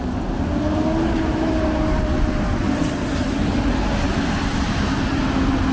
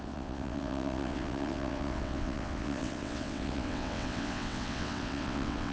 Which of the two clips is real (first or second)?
first